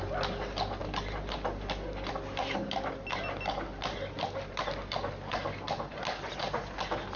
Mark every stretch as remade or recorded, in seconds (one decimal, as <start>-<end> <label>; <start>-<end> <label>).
0.0-7.2 recorded